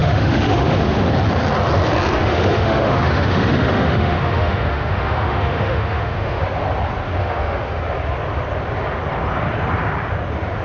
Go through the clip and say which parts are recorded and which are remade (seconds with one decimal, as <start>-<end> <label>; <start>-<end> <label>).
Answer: 0.0-1.1 remade; 1.1-2.2 recorded; 2.2-6.4 remade; 6.4-7.2 recorded; 7.2-7.8 remade; 7.8-10.6 recorded